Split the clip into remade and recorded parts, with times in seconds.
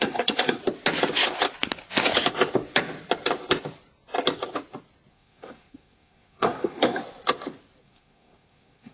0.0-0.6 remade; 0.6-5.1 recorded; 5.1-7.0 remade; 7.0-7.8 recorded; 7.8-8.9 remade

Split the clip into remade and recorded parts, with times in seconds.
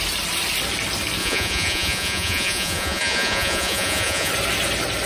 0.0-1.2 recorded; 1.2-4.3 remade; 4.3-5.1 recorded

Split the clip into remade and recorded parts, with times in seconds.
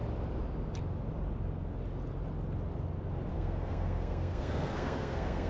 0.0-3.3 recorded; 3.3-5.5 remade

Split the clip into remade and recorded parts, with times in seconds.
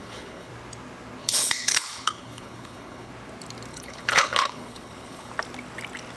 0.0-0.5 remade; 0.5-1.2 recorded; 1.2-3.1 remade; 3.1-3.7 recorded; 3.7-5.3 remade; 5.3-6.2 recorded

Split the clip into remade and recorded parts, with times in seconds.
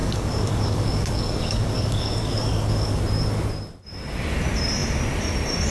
0.0-3.0 remade; 3.0-5.7 recorded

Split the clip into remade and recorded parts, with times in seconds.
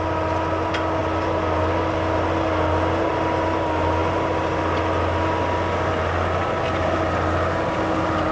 0.0-8.3 recorded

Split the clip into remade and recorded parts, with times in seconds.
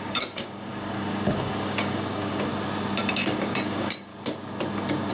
0.0-2.5 remade; 2.5-3.1 recorded; 3.1-4.1 remade; 4.1-5.1 recorded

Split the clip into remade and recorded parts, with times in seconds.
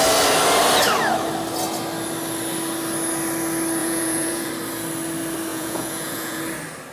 0.0-3.8 recorded; 3.8-4.5 remade; 4.5-5.5 recorded; 5.5-6.4 remade; 6.4-6.9 recorded